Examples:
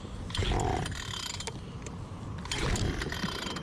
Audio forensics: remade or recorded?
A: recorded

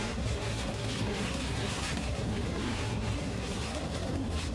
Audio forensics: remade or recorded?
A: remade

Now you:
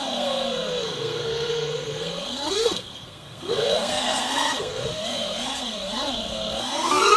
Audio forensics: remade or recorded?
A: remade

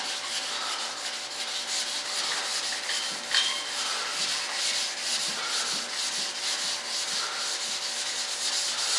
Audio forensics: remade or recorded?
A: recorded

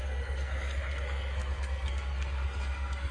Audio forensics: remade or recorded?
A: remade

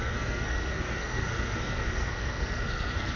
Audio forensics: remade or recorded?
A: remade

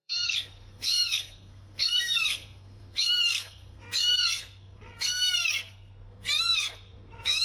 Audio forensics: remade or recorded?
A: remade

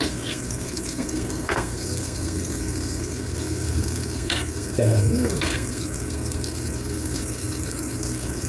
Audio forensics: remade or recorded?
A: remade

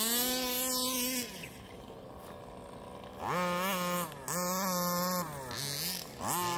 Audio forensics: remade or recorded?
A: recorded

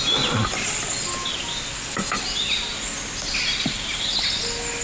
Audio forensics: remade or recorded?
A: recorded